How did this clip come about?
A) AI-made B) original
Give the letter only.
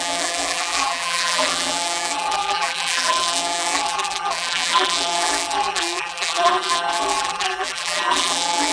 A